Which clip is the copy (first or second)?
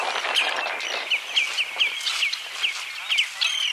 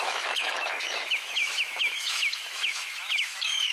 second